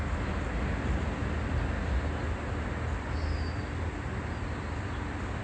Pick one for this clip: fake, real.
real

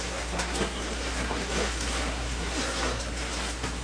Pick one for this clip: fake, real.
fake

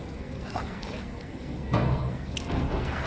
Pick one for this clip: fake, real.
fake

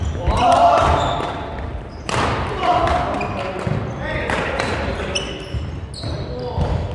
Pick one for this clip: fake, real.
real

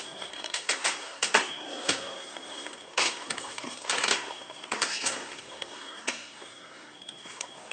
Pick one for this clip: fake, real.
fake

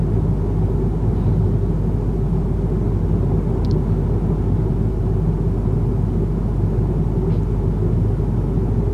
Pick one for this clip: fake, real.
real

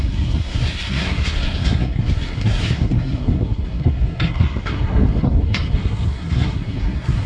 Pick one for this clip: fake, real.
fake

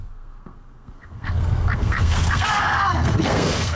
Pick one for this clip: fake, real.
fake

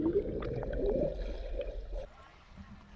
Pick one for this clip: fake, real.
real